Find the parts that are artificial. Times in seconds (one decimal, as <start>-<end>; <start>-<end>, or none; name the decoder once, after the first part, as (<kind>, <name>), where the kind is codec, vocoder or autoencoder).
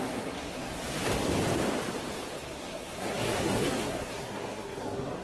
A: 0.0-0.7 (codec, SNAC); 2.4-5.2